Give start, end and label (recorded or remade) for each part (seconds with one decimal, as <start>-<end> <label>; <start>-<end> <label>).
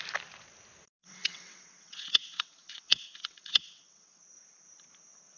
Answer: 0.0-1.0 recorded; 1.0-4.2 remade; 4.2-5.4 recorded